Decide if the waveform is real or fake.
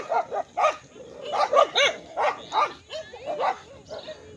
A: real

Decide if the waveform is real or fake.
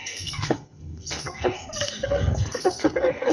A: fake